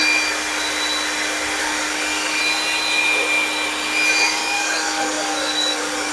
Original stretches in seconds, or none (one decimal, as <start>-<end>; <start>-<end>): 0.0-1.6; 2.4-4.4